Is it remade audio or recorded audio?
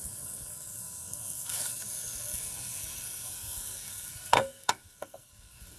remade